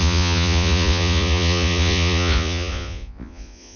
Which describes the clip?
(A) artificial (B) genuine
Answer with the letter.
A